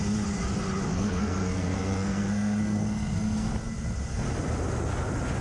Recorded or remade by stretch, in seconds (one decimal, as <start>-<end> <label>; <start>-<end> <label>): 0.0-0.9 recorded; 0.9-3.5 remade; 3.5-5.4 recorded